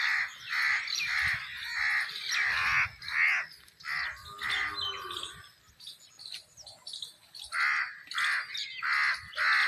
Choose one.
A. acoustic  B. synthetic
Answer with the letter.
A